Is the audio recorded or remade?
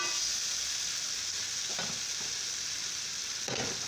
recorded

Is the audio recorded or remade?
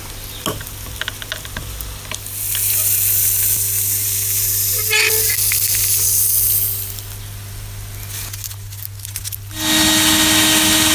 recorded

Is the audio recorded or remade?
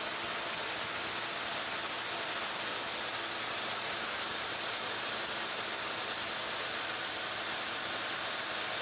recorded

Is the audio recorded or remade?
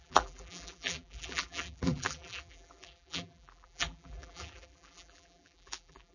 remade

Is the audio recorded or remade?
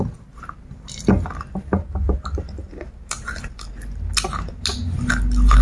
recorded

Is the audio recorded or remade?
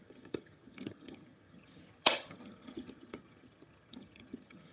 remade